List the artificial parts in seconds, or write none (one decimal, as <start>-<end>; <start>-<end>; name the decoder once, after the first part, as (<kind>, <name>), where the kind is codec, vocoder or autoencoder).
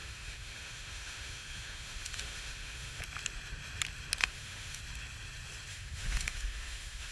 0.0-3.0 (autoencoder, DAC-VAE); 4.2-4.8; 5.7-7.1